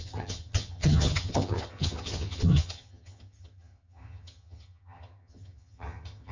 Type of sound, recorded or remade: remade